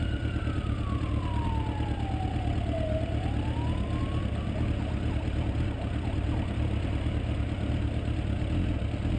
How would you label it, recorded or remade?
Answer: recorded